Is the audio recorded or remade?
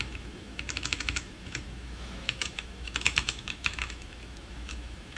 remade